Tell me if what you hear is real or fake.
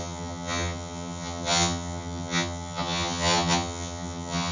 fake